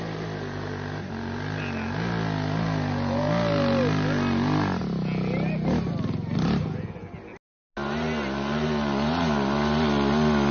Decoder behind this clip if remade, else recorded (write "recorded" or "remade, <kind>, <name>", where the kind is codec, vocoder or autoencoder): recorded